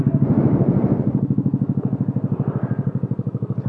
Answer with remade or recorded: remade